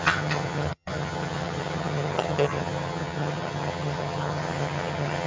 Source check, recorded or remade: remade